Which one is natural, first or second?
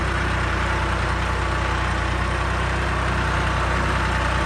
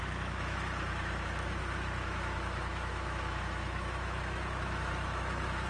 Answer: first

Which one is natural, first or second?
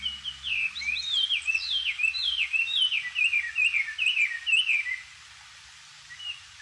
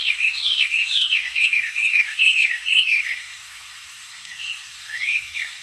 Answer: first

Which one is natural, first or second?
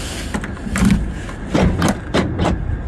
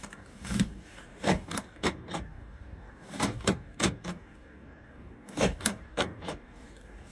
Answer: first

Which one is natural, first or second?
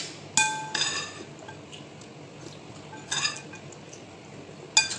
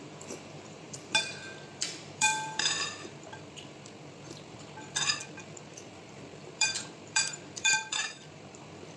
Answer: first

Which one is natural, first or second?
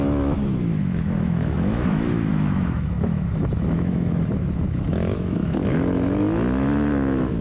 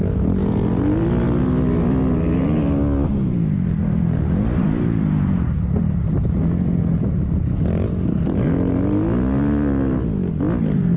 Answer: second